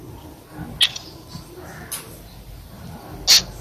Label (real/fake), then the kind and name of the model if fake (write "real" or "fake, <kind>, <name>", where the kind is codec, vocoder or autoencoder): real